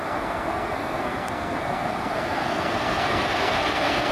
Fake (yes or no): yes